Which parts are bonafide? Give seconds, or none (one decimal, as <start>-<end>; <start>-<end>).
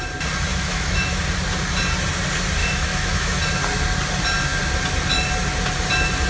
0.0-0.5; 1.2-2.6; 3.4-6.3